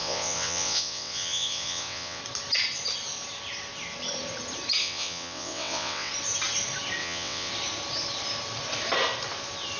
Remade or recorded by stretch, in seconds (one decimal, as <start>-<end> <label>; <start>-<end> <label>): 0.0-2.2 remade; 2.2-4.8 recorded; 4.8-6.1 remade; 6.1-7.0 recorded; 7.0-7.5 remade; 7.5-9.8 recorded